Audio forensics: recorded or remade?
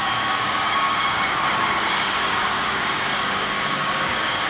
remade